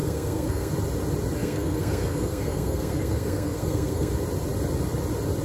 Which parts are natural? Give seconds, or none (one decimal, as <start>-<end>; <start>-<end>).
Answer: 0.7-1.4; 4.1-5.4